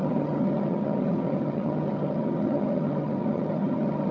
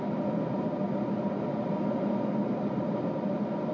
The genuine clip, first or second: second